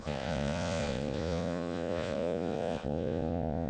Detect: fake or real fake